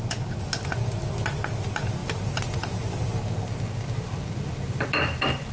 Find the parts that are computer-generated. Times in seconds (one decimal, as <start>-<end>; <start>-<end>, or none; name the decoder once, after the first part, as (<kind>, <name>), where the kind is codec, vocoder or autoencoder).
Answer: none